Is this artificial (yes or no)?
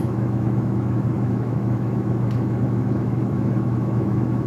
yes